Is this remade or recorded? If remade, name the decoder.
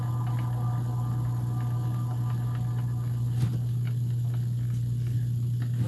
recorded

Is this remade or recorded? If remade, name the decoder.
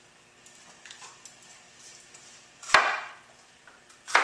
recorded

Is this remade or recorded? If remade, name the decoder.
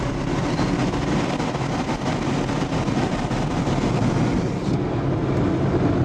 recorded